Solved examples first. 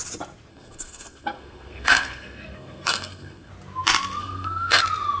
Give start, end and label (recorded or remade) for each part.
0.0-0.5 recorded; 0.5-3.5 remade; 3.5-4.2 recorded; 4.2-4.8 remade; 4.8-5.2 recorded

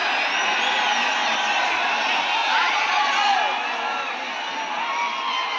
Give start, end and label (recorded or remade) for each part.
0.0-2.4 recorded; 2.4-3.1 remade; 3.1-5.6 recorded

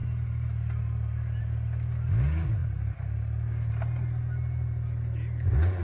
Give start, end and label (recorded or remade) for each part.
0.0-5.8 recorded

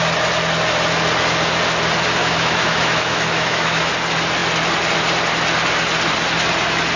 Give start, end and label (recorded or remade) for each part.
0.0-2.2 recorded; 2.2-3.9 remade; 3.9-7.0 recorded

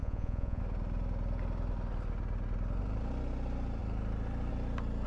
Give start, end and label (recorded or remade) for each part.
0.0-0.6 remade; 0.6-5.1 recorded

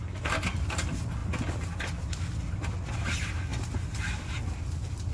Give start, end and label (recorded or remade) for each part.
0.0-5.1 recorded

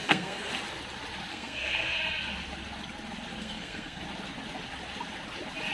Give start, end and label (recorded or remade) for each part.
0.0-0.5 remade; 0.5-1.3 recorded; 1.3-2.0 remade; 2.0-3.4 recorded; 3.4-4.0 remade; 4.0-5.7 recorded

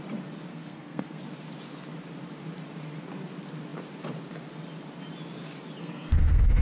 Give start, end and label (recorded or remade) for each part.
0.0-0.5 recorded; 0.5-1.2 remade; 1.2-5.8 recorded; 5.8-6.6 remade